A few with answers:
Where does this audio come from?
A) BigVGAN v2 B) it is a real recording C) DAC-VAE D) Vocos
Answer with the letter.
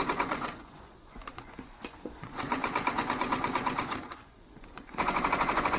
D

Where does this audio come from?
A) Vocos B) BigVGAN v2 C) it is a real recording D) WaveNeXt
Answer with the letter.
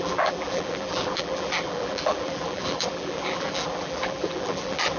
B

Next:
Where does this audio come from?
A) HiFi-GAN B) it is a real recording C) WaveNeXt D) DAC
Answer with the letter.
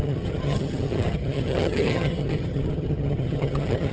A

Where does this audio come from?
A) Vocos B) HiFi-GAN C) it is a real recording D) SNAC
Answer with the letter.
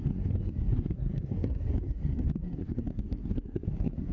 D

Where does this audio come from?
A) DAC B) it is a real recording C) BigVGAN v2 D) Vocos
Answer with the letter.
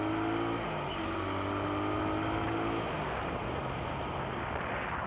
B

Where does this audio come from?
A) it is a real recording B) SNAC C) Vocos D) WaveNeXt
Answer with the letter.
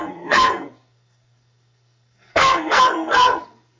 B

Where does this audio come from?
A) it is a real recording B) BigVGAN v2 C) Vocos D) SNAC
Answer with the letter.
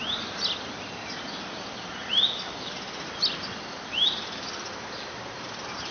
A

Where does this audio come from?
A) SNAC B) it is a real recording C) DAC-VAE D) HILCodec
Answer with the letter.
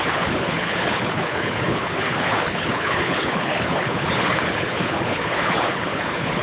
D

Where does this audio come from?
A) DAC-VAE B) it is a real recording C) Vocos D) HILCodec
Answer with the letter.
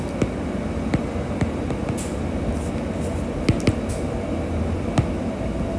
B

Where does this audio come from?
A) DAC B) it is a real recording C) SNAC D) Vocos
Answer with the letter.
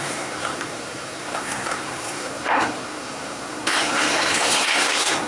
C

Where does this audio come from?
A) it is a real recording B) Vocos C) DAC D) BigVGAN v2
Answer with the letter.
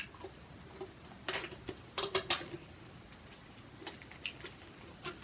A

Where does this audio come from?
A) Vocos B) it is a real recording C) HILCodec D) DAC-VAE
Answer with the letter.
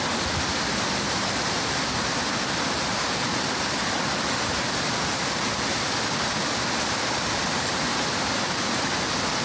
B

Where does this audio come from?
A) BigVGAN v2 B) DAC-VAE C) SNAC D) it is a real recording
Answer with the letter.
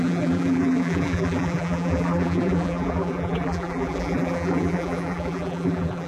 A